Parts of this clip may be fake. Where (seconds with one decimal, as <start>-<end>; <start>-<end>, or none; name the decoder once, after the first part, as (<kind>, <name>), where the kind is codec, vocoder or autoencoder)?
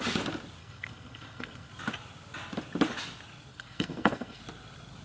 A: 0.6-1.7 (codec, SNAC); 3.5-4.4